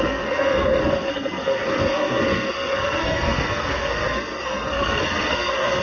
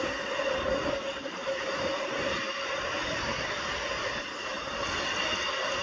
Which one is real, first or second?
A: second